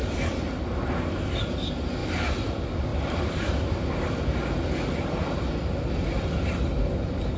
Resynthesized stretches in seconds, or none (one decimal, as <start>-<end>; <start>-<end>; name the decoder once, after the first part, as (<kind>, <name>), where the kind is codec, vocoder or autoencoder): 0.0-0.5 (vocoder, BigVGAN v2); 2.0-2.5; 2.9-3.5